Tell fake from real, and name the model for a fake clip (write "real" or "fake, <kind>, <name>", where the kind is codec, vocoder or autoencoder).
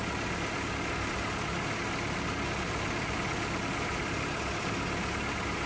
real